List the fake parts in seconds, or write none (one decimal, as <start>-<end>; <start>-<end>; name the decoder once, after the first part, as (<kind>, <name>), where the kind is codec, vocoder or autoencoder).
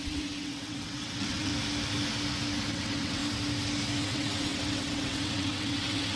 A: 0.0-1.5 (vocoder, WaveNeXt); 2.7-3.2; 4.0-6.2